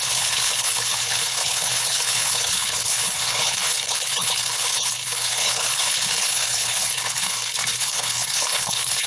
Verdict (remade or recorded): remade